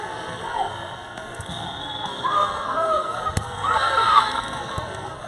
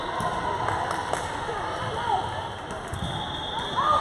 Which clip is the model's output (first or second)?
first